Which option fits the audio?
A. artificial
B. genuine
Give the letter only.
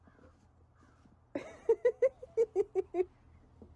B